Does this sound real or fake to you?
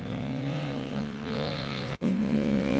fake